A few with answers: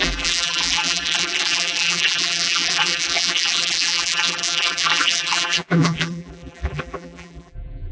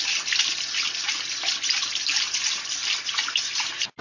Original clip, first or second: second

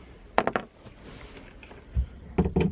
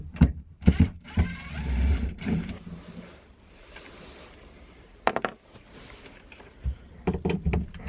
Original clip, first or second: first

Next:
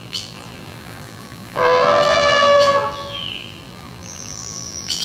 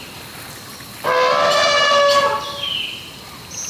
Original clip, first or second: second